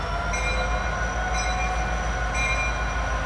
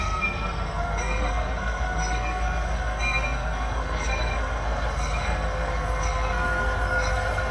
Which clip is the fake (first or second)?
second